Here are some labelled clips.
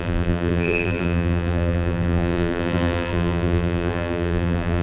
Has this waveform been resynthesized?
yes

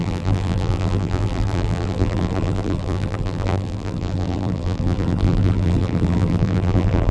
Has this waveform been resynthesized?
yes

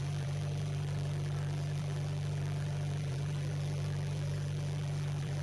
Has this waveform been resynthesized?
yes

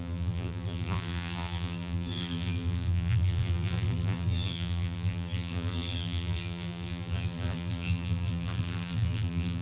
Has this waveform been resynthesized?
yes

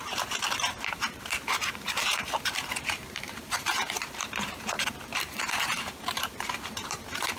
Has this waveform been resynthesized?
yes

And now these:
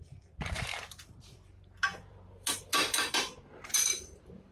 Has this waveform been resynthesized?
yes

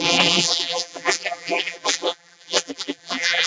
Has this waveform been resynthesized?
yes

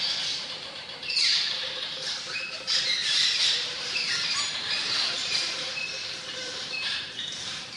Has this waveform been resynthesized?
yes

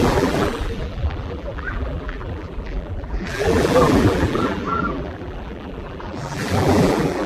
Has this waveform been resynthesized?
yes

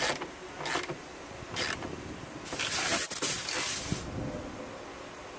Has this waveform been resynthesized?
no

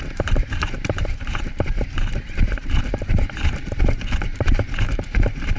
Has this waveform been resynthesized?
yes